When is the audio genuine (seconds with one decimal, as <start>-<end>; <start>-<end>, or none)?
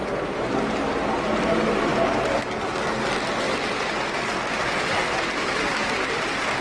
0.0-6.6